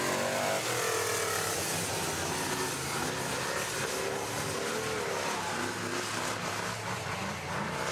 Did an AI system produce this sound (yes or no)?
no